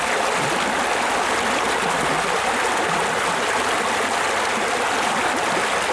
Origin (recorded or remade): recorded